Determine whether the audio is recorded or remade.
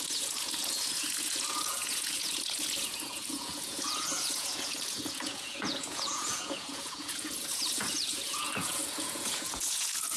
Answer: remade